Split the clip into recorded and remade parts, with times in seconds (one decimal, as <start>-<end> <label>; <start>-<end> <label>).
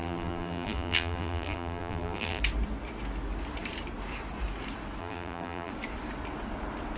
0.0-2.4 remade; 2.4-5.0 recorded; 5.0-5.7 remade; 5.7-7.0 recorded